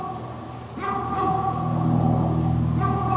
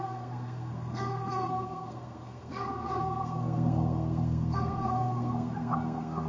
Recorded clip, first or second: first